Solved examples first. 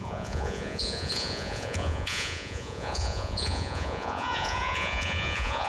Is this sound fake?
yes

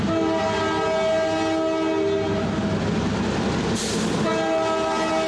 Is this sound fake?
no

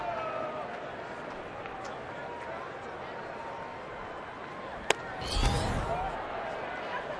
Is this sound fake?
no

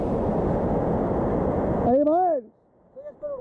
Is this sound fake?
no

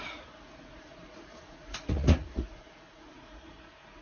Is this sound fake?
yes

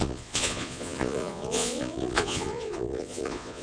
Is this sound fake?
yes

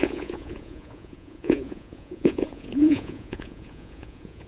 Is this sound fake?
yes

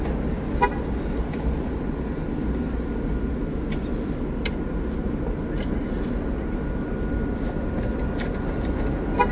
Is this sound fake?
no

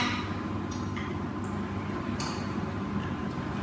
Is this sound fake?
no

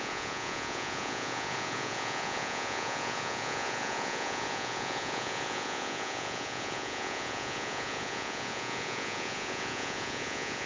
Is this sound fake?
yes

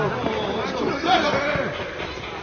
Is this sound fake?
no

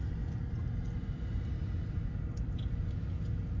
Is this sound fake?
no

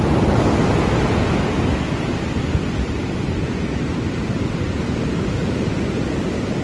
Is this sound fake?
no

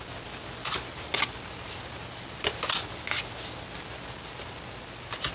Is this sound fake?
no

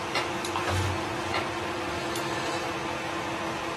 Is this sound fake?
no